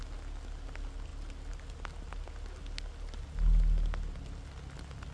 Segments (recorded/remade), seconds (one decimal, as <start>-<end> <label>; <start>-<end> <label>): 0.0-5.1 recorded